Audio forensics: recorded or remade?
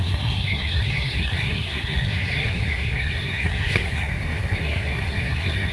remade